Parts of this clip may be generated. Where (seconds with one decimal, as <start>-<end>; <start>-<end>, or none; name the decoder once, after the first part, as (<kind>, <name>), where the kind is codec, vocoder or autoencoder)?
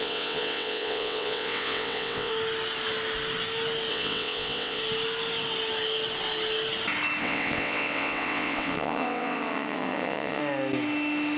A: 0.0-2.3 (vocoder, WaveNeXt); 3.9-4.8; 7.2-10.4